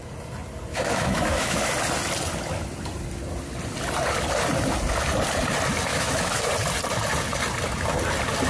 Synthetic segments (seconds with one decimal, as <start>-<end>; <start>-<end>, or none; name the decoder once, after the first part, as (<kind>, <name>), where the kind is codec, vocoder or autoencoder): 0.7-1.6 (autoencoder, DAC-VAE); 5.9-6.5